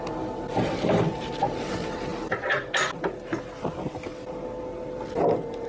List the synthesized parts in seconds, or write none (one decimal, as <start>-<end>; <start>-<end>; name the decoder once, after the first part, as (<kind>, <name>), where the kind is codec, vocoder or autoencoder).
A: none